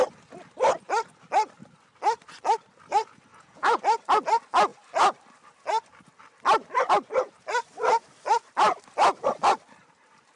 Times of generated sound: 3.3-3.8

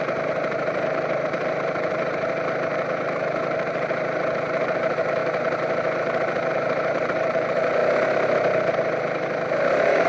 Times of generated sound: 0.0-5.2; 6.5-7.8; 9.7-10.1

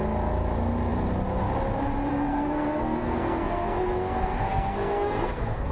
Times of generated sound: 2.1-5.7

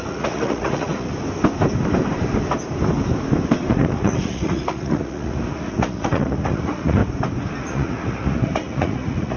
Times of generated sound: 0.0-1.1; 3.7-7.0; 7.6-9.4

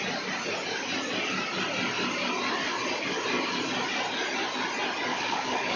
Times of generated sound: 5.1-5.8

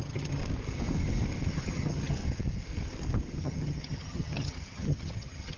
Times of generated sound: 0.0-0.4; 1.5-2.2; 3.4-5.6